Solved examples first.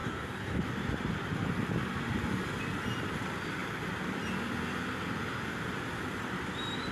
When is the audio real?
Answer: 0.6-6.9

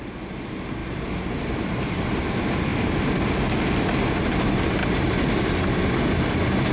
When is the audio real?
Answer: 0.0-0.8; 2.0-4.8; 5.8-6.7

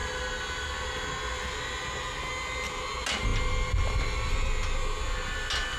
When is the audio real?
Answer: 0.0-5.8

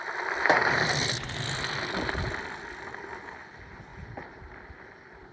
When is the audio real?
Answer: 3.9-4.8

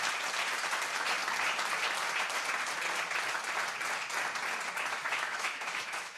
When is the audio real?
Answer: 0.0-5.0

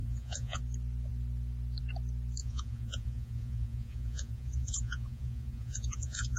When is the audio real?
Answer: 0.6-2.4

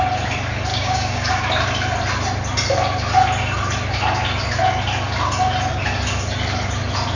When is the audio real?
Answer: 0.0-0.7; 1.3-7.2

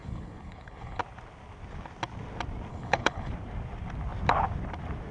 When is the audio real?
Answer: 1.0-2.7; 3.3-5.1